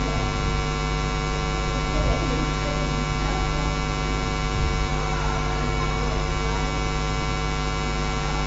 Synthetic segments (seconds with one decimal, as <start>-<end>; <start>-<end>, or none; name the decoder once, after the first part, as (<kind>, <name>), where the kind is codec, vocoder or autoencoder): 4.9-6.3 (autoencoder, DAC-VAE)